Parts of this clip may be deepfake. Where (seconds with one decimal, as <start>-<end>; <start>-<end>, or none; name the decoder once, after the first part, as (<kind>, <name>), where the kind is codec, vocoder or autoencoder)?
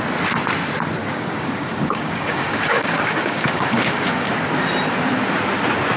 1.0-4.3 (codec, DAC)